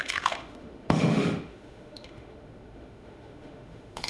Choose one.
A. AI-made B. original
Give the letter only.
A